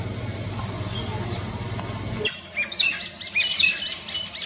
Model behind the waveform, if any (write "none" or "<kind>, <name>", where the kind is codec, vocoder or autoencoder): none